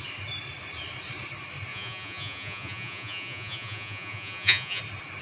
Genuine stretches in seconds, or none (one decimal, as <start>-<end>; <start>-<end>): 0.0-1.7; 4.8-5.2